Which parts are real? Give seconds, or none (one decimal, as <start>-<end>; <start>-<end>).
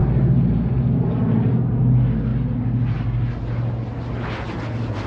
0.0-5.1